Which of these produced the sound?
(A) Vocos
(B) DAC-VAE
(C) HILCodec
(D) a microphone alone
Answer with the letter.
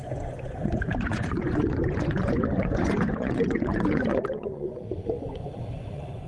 A